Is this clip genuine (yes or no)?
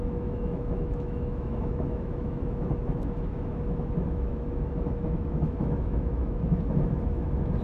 no